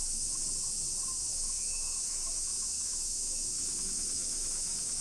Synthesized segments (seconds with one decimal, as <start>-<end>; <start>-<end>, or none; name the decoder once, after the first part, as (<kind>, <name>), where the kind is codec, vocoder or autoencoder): 0.0-0.4 (autoencoder, DAC-VAE); 1.2-5.0

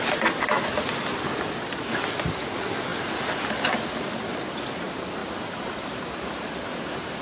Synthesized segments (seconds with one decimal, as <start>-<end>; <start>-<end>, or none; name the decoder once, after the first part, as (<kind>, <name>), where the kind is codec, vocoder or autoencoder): none

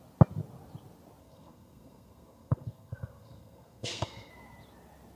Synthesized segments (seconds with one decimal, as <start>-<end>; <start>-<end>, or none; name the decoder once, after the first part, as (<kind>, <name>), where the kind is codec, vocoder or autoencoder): 1.2-4.3 (codec, SNAC)

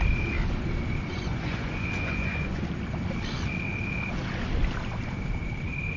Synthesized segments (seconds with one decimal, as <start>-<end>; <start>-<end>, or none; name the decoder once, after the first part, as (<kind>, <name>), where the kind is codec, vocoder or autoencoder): 1.1-2.6 (vocoder, Vocos)

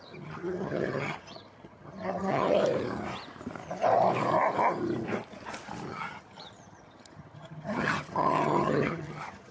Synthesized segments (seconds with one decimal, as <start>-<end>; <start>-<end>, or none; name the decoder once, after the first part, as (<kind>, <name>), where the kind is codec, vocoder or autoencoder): 0.0-2.6 (vocoder, HiFi-GAN); 5.9-9.5